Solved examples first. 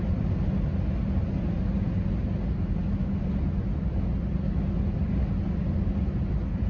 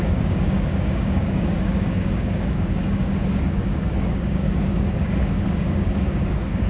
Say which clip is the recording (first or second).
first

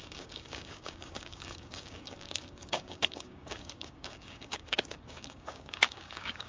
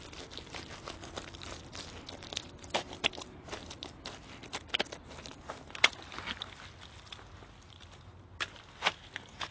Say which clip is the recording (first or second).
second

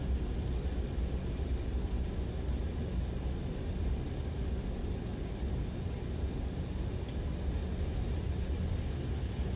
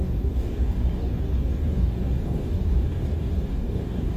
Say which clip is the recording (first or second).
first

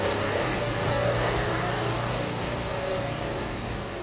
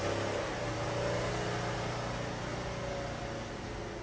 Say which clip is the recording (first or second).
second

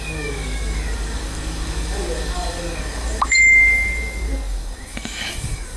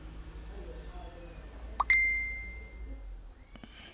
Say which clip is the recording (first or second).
second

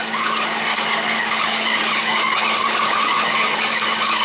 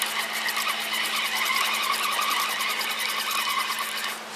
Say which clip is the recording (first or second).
second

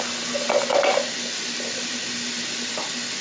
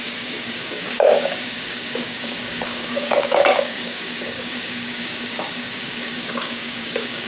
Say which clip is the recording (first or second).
first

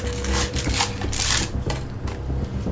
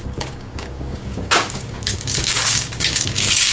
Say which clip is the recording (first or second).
first